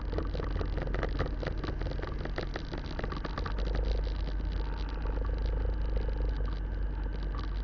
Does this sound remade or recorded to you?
recorded